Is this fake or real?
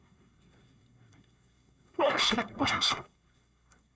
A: fake